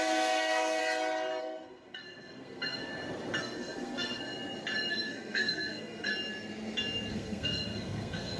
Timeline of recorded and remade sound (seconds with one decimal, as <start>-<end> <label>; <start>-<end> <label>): 0.0-0.8 remade; 0.8-1.4 recorded; 1.4-2.9 remade; 2.9-3.4 recorded; 3.4-4.2 remade; 4.2-4.9 recorded; 4.9-6.1 remade; 6.1-7.1 recorded; 7.1-8.4 remade